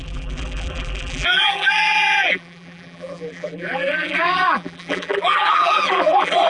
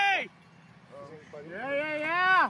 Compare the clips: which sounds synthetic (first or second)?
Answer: first